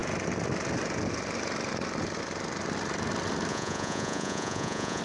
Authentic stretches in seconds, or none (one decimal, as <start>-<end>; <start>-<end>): 0.0-3.5